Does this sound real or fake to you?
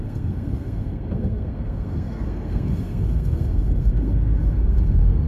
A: fake